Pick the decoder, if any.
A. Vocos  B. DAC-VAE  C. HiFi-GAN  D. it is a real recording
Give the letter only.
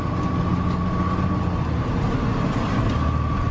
D